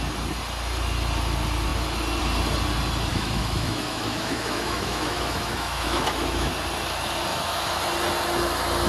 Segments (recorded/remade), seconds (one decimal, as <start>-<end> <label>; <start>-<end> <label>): 0.0-3.1 recorded; 3.1-6.5 remade; 6.5-7.3 recorded; 7.3-7.8 remade; 7.8-8.9 recorded